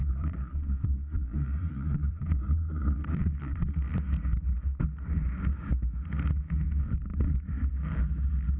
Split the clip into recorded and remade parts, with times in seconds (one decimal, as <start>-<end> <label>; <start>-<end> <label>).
0.0-3.7 remade; 3.7-8.6 recorded